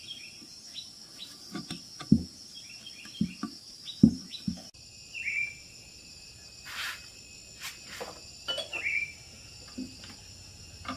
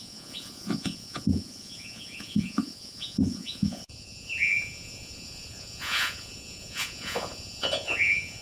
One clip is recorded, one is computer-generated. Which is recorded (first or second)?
first